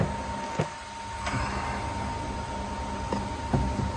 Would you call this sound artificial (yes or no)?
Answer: no